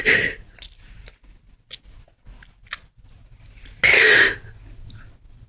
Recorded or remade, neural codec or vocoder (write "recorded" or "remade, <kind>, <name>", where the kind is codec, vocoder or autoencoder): recorded